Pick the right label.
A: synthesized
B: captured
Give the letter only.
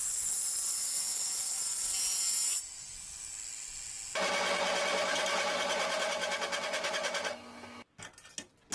B